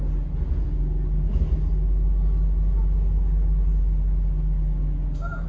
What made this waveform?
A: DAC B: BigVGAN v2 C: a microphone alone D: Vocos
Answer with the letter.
C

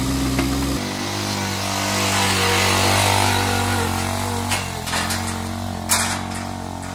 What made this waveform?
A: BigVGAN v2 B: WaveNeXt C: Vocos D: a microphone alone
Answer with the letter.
D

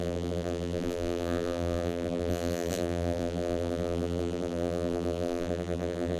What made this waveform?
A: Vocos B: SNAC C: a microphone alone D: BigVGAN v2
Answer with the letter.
D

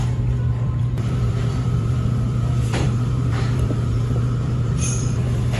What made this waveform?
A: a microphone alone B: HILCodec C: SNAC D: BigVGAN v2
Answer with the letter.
D